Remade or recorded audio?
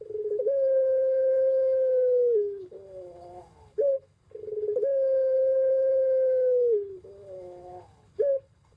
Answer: remade